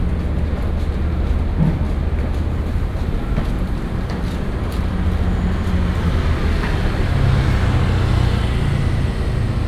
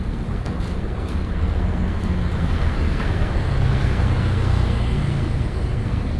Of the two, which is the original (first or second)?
first